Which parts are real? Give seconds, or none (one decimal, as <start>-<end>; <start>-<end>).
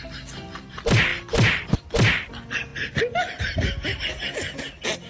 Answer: 0.0-5.1